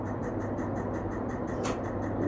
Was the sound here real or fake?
real